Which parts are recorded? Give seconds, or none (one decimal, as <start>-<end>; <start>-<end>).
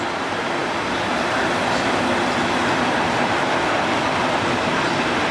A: 0.0-5.3